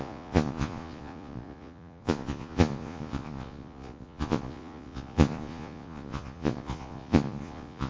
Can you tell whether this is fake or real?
fake